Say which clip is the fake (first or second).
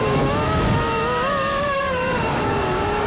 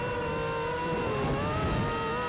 first